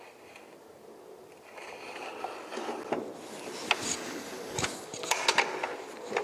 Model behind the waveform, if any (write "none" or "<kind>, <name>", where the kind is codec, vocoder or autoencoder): none